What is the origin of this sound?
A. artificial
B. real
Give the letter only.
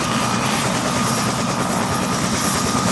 B